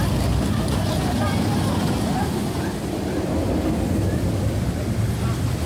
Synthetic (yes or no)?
no